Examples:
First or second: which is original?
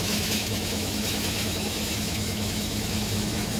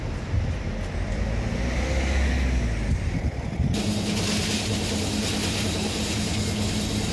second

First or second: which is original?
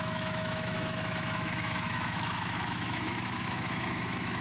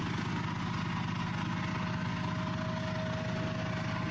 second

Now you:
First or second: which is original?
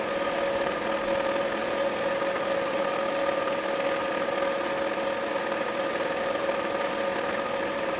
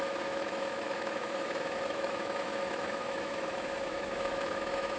first